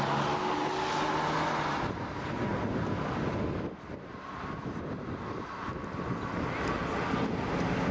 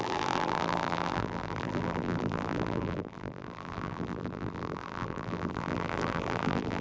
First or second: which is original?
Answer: first